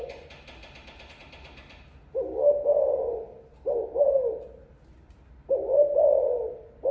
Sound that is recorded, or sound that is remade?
recorded